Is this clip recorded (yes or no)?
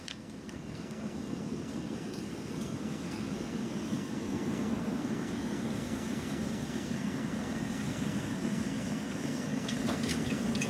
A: no